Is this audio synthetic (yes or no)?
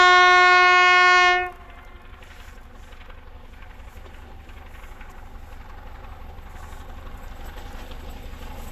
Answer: no